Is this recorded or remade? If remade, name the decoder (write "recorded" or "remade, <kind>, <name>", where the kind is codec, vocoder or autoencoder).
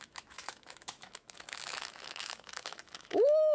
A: remade, autoencoder, DAC-VAE